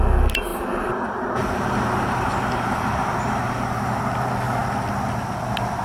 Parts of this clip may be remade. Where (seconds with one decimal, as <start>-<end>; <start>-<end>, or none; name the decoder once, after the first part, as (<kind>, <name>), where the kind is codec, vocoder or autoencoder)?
0.5-4.0 (vocoder, BigVGAN v2)

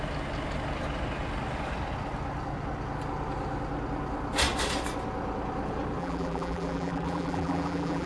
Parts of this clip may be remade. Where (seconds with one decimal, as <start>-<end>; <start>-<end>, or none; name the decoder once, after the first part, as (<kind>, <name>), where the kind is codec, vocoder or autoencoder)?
6.0-8.1 (vocoder, BigVGAN v2)

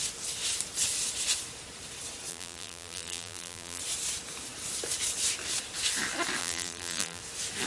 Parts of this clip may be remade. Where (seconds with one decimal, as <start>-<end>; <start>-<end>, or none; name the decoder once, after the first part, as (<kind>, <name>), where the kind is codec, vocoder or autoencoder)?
2.3-3.8 (vocoder, BigVGAN v2); 6.4-7.2